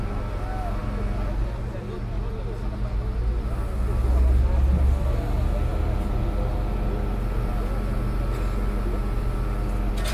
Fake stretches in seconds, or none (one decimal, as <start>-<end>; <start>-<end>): none